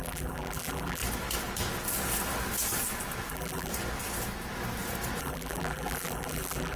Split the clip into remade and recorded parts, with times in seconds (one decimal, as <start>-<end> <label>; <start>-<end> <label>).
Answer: 0.0-1.0 remade; 1.0-3.3 recorded; 3.3-3.7 remade; 3.7-5.2 recorded; 5.2-6.8 remade